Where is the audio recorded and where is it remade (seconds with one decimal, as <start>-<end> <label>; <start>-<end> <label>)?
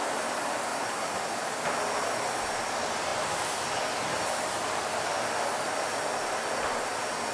0.0-0.7 recorded; 0.7-1.5 remade; 1.5-3.1 recorded; 3.1-3.6 remade; 3.6-7.3 recorded